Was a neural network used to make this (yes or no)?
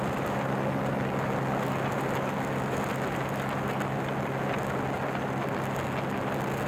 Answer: no